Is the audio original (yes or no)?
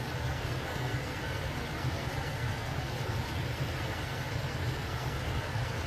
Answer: no